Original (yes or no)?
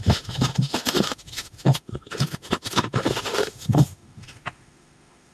no